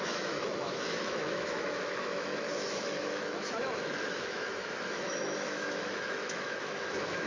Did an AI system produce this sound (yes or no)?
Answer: yes